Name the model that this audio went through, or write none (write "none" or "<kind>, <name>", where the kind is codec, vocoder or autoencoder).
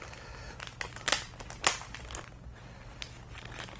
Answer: none